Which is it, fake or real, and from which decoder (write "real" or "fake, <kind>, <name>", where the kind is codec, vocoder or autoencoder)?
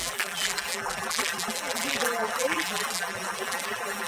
fake, vocoder, BigVGAN v2